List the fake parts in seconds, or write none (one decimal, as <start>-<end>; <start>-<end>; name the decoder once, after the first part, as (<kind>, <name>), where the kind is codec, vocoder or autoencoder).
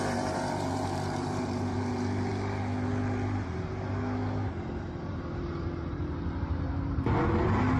0.0-2.3 (vocoder, BigVGAN v2); 4.8-7.8